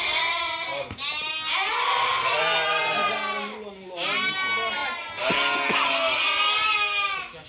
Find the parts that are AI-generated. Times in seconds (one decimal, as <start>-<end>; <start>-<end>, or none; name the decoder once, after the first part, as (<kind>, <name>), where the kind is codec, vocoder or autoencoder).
none